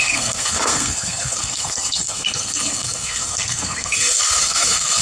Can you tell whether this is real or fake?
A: fake